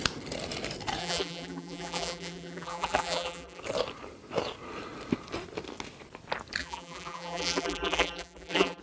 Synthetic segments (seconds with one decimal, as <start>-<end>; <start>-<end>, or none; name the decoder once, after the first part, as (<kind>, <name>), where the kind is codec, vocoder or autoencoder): 1.0-3.6 (vocoder, BigVGAN v2); 6.6-8.8

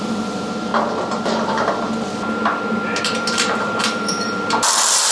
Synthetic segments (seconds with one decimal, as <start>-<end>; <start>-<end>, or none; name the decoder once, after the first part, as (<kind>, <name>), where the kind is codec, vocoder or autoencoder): 0.0-0.7 (vocoder, BigVGAN v2); 3.0-5.1

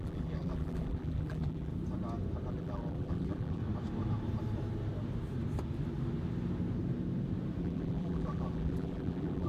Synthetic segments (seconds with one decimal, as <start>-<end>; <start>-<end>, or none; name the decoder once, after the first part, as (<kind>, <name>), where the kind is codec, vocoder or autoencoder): 0.0-1.7 (vocoder, BigVGAN v2); 2.5-3.6; 7.6-9.5

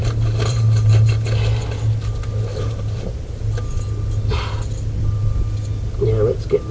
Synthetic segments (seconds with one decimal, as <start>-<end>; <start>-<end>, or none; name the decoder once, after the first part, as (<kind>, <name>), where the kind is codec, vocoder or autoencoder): 0.0-1.1 (vocoder, BigVGAN v2); 2.5-3.1

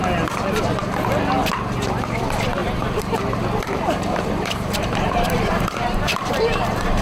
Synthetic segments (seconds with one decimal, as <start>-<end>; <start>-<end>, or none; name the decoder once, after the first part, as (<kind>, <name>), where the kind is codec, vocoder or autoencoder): 2.6-7.0 (vocoder, BigVGAN v2)

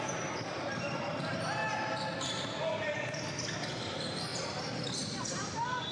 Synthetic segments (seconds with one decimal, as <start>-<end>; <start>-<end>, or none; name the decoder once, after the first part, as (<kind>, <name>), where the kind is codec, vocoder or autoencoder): 0.0-1.6 (vocoder, BigVGAN v2); 3.7-4.3; 5.2-5.9